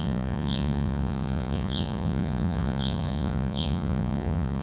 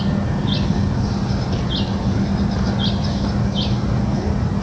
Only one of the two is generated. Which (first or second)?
first